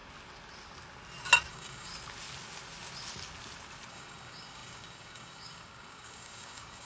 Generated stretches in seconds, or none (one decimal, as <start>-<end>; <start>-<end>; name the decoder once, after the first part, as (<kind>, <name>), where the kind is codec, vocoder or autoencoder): 1.5-1.9 (codec, DAC); 3.9-6.9